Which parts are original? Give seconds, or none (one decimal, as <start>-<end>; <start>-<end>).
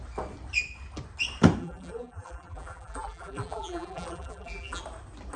0.0-1.6; 4.8-5.4